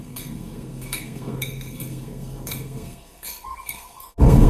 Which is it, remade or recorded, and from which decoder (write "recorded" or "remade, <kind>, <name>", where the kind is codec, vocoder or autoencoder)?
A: remade, codec, SNAC